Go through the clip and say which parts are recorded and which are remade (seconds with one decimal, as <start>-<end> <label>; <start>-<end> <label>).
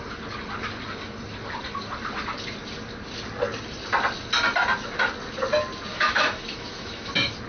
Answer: 0.0-5.9 recorded; 5.9-7.1 remade; 7.1-7.5 recorded